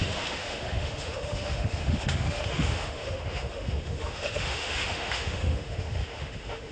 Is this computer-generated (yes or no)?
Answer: yes